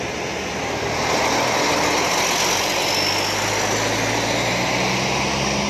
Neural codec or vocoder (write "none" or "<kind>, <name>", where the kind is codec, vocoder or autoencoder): none